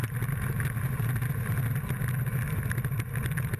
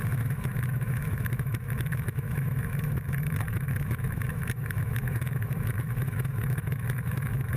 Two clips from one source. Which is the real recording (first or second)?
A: first